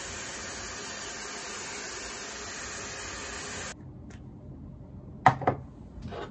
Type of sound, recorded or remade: recorded